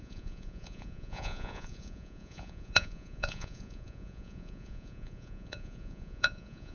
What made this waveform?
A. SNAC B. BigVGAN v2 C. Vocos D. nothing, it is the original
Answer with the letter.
C